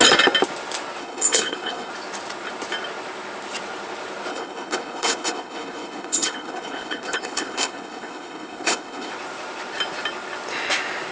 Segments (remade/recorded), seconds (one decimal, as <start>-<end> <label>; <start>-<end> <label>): 0.0-1.0 recorded; 1.0-1.9 remade; 1.9-4.3 recorded; 4.3-9.1 remade; 9.1-11.1 recorded